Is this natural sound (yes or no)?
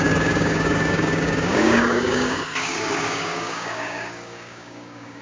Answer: no